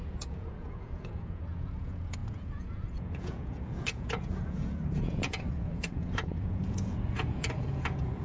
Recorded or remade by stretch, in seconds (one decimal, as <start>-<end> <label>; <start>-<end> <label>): 0.0-8.2 remade